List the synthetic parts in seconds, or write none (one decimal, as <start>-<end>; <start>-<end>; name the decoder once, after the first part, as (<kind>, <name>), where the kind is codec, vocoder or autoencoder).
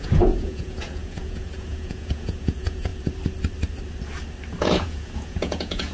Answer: 0.0-2.9 (vocoder, Vocos); 4.6-5.9